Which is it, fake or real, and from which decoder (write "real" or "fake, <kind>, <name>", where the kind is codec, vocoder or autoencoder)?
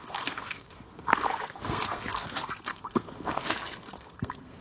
fake, codec, SNAC